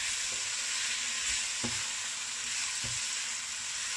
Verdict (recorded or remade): recorded